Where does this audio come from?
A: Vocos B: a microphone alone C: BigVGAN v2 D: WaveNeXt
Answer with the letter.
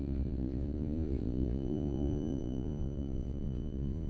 A